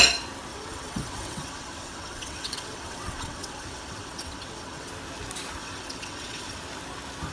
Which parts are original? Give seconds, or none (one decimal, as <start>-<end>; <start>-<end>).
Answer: 0.0-0.5; 4.9-5.6; 6.6-7.3